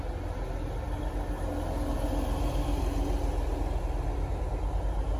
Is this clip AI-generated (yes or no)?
no